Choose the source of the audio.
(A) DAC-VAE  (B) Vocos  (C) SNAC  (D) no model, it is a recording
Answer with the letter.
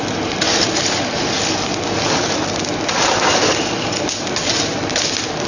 D